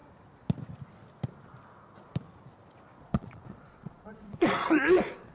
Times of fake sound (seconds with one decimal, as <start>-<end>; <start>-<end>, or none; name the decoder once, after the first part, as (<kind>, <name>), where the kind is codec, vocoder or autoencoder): 3.0-5.3 (vocoder, Vocos)